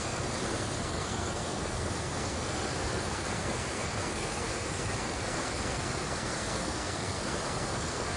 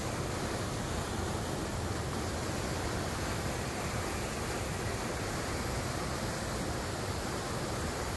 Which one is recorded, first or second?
second